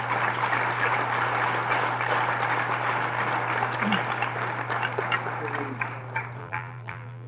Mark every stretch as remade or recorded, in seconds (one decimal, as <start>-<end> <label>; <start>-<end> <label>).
0.0-6.4 recorded; 6.4-7.3 remade